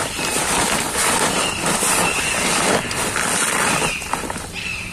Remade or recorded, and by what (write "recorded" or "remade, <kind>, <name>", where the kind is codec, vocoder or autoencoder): recorded